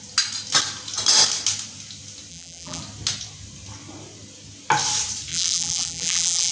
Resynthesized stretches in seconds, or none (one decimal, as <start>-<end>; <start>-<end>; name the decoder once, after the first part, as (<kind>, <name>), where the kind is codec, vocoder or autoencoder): 2.3-2.8 (vocoder, BigVGAN v2); 5.3-6.5